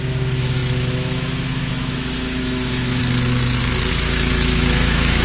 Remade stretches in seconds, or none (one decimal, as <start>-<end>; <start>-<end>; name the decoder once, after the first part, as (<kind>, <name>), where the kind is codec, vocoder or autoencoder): 0.0-3.0 (autoencoder, DAC-VAE); 3.9-5.2